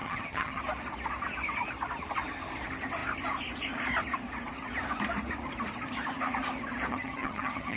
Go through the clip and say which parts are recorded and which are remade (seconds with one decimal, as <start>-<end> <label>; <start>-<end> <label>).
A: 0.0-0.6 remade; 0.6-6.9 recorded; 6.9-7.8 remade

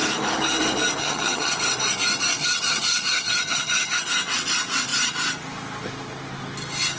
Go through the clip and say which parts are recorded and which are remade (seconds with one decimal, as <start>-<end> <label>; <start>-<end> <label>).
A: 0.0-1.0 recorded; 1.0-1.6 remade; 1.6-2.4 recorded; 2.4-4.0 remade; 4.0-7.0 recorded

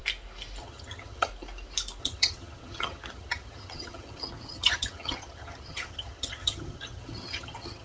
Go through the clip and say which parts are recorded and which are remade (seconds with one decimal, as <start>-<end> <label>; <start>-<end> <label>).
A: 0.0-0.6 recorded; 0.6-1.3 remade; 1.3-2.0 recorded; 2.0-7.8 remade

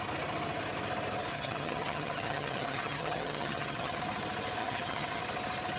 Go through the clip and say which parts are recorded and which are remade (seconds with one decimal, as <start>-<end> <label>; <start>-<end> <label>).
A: 0.0-1.3 recorded; 1.3-4.0 remade; 4.0-4.6 recorded; 4.6-5.2 remade; 5.2-5.8 recorded

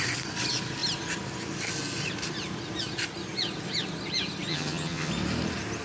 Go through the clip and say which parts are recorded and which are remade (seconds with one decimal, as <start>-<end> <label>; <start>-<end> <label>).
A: 0.0-4.5 recorded; 4.5-5.1 remade; 5.1-5.8 recorded